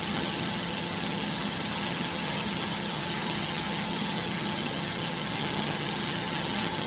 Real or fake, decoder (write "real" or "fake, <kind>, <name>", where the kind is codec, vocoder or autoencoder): fake, vocoder, HiFi-GAN